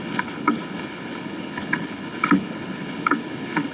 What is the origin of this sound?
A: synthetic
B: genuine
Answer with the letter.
A